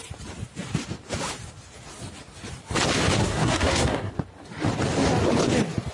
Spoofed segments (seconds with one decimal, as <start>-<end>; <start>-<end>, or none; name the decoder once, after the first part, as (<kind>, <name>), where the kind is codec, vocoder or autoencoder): 3.2-4.1 (codec, SNAC)